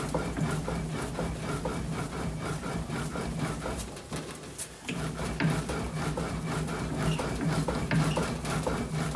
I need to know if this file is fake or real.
real